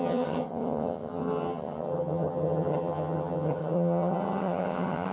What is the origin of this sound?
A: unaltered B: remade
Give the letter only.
B